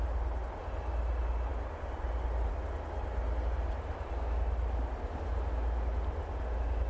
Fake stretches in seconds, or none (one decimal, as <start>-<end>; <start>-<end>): none